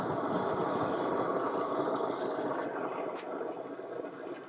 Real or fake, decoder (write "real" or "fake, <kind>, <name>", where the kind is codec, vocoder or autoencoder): real